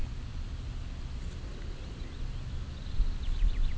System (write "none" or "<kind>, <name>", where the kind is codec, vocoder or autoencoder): none